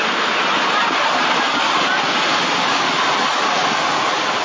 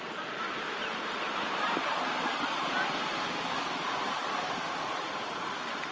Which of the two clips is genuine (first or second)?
first